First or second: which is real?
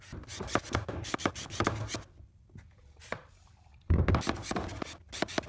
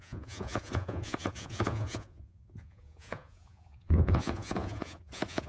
first